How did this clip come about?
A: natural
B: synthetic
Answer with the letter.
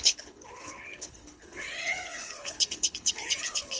B